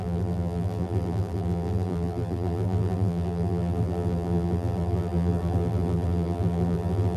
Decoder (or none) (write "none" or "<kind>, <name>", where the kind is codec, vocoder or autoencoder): vocoder, BigVGAN v2